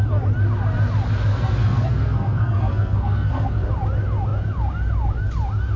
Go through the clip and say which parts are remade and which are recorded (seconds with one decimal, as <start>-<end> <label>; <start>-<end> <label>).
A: 0.0-1.3 recorded; 1.3-3.7 remade; 3.7-5.8 recorded